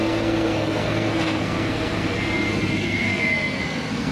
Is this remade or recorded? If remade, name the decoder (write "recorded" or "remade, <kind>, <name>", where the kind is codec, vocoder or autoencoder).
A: remade, codec, SNAC